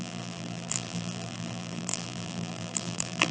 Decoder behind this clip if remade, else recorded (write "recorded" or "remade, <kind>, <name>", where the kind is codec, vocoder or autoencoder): remade, vocoder, BigVGAN v2